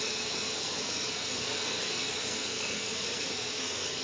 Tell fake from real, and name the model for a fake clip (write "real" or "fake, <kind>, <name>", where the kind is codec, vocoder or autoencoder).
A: fake, codec, SNAC